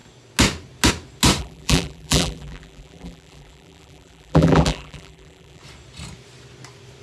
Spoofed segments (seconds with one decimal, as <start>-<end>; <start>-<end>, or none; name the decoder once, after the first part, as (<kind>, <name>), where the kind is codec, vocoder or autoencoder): 1.4-5.6 (vocoder, BigVGAN v2)